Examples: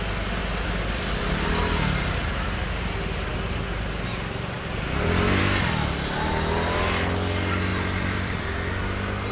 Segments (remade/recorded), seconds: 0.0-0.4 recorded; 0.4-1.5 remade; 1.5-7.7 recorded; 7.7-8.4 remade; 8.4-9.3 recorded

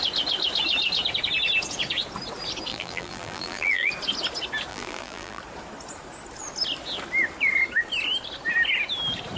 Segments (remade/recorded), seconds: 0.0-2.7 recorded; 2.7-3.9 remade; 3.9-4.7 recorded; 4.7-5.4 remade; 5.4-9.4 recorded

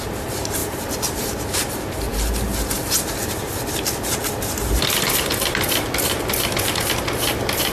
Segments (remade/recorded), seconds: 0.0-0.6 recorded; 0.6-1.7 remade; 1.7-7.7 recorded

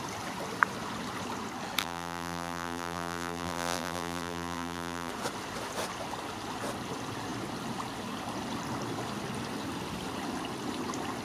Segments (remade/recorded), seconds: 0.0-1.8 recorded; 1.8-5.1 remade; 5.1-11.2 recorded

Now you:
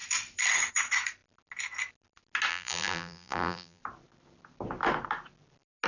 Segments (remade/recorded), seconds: 0.0-2.5 recorded; 2.5-3.8 remade; 3.8-5.9 recorded